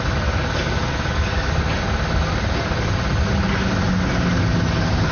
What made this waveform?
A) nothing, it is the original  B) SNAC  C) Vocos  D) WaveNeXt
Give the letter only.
A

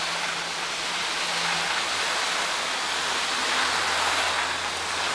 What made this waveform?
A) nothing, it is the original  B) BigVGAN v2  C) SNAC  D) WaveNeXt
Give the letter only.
A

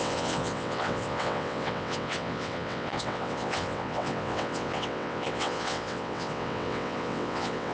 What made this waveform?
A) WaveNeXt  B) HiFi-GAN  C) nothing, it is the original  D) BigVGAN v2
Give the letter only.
A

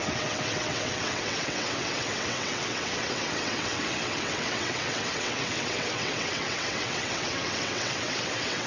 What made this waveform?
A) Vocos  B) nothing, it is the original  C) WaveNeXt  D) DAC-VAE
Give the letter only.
C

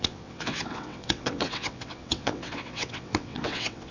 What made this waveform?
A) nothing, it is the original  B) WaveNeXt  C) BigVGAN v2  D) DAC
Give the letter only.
B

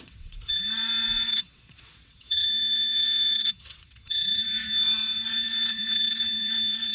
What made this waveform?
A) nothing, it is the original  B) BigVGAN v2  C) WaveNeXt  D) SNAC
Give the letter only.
C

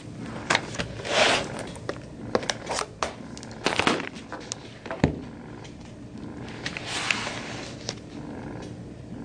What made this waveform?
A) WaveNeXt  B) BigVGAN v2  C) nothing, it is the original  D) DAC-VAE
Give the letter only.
C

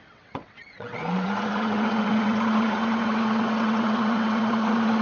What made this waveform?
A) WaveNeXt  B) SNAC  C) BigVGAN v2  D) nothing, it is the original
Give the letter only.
A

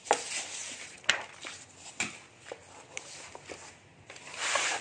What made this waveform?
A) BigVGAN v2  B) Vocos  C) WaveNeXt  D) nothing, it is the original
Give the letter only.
D